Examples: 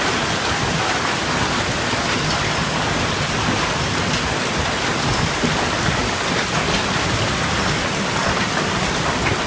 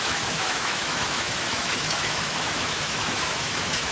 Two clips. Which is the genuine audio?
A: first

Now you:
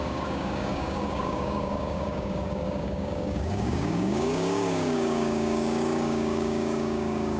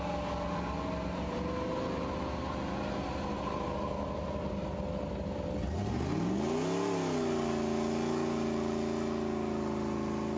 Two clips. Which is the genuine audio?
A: second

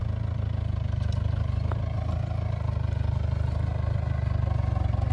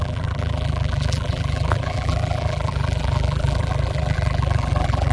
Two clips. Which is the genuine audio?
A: first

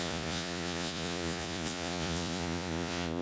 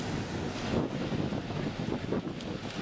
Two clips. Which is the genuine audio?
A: second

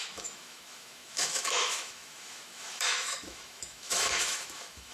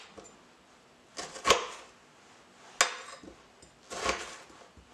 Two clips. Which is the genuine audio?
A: second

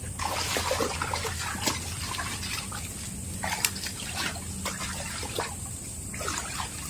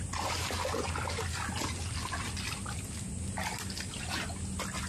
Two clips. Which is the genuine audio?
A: second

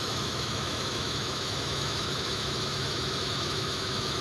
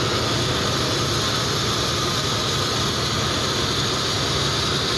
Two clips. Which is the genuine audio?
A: second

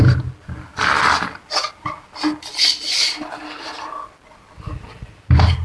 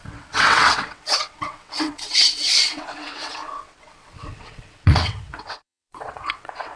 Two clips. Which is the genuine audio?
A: first